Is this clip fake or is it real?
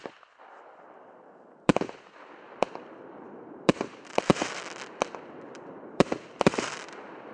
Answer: fake